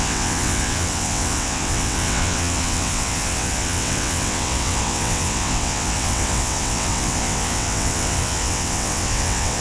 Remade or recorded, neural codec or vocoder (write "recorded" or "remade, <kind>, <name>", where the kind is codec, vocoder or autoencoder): remade, vocoder, WaveNeXt